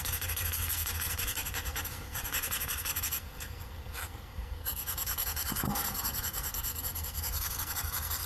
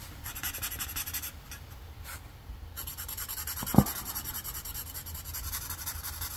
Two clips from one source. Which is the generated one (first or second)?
first